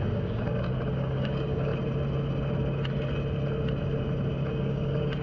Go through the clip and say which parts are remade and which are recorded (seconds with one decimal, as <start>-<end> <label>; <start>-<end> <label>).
0.0-1.7 remade; 1.7-4.5 recorded; 4.5-5.2 remade